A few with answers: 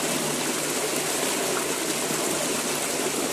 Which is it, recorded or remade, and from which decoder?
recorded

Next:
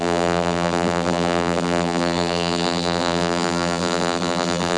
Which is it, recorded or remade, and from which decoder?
remade, vocoder, BigVGAN v2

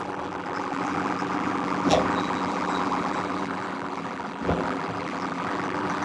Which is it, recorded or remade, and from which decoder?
remade, vocoder, BigVGAN v2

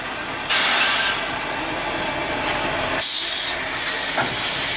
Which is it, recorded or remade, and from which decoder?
recorded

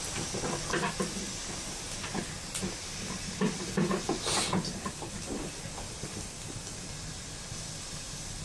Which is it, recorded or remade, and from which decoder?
recorded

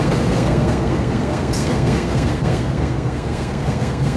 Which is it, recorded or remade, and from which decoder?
remade, codec, SNAC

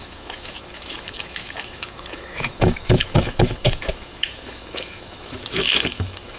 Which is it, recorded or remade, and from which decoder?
remade, autoencoder, DAC-VAE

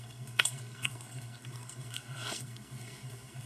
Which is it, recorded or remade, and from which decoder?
remade, codec, SNAC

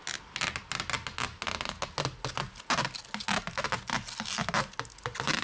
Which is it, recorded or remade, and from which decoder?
recorded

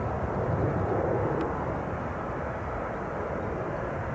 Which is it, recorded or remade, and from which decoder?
recorded